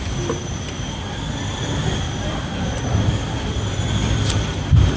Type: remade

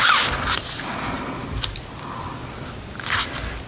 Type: recorded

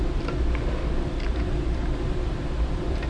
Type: remade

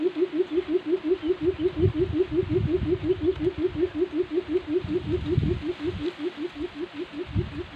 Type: recorded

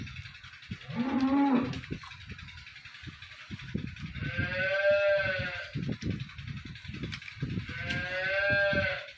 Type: recorded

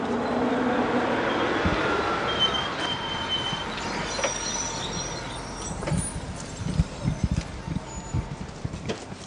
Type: recorded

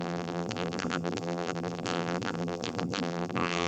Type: remade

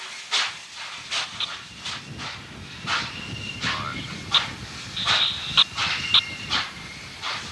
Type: recorded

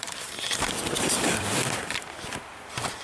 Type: remade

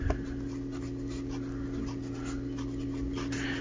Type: recorded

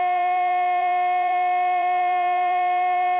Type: remade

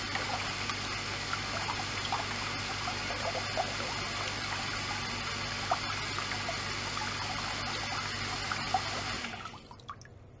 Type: recorded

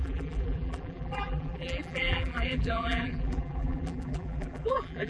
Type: remade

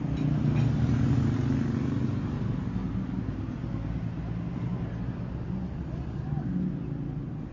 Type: recorded